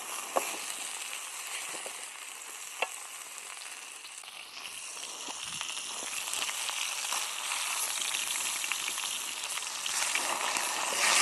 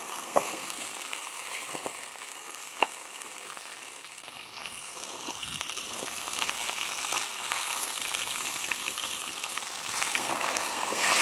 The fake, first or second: second